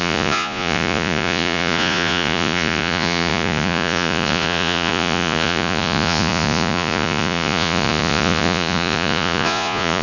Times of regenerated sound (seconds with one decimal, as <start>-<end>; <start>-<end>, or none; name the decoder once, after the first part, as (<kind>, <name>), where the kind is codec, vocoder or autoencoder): 0.0-10.0 (vocoder, Vocos)